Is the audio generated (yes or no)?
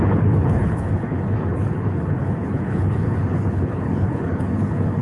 yes